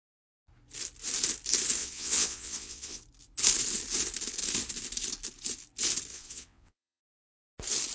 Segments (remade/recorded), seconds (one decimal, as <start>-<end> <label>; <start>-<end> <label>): 0.0-1.8 recorded; 1.8-3.0 remade; 3.0-6.1 recorded; 6.1-7.0 remade; 7.0-7.9 recorded